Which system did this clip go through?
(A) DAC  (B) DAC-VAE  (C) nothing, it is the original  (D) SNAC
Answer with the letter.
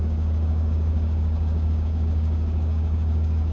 A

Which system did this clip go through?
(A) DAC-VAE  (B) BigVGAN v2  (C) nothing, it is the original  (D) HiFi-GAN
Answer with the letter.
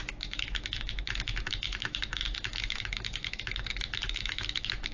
A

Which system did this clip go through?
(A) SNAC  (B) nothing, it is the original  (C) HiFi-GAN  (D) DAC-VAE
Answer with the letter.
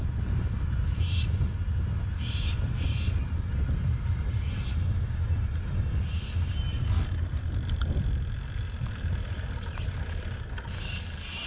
B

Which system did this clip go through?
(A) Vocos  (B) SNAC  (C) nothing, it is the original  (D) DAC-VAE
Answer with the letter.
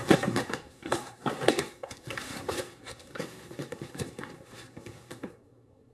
B